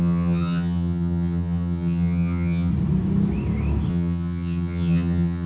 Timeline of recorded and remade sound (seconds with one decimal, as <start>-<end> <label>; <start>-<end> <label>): 0.0-2.7 remade; 2.7-3.9 recorded; 3.9-5.5 remade